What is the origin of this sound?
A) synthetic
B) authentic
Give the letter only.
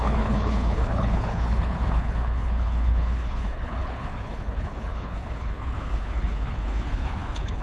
A